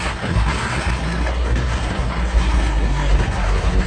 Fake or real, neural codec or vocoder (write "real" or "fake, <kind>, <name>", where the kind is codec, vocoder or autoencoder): fake, codec, SNAC